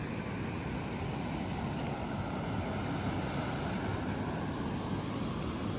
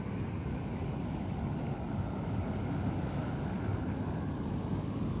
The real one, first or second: first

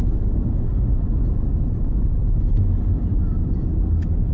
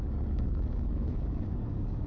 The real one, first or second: first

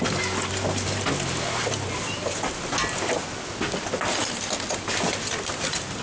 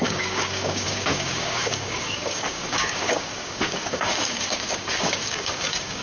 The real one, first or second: first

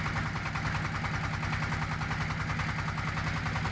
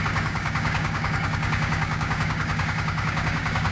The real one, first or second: first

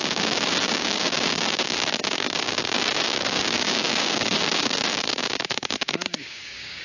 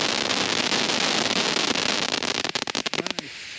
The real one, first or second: second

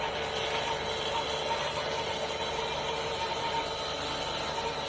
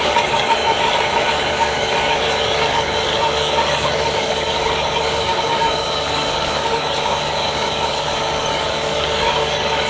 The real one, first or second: first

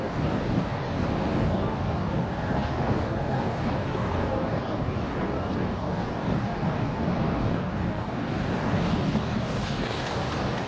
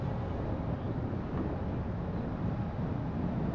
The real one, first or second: second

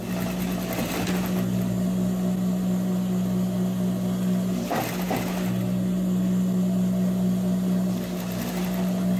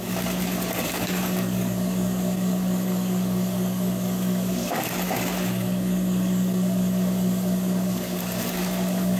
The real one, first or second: first